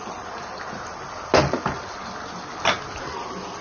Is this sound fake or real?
real